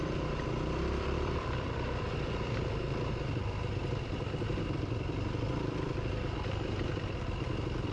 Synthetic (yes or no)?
yes